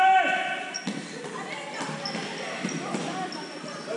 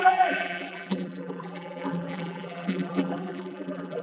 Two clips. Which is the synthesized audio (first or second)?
second